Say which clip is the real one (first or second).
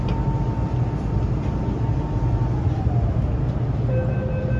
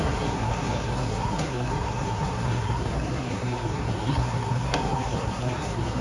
first